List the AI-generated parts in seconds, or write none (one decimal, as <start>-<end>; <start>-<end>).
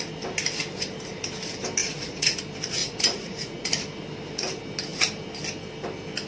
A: 1.8-2.4; 2.8-3.7